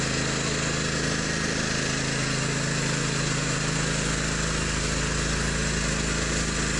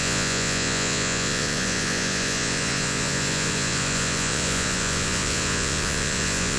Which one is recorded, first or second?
first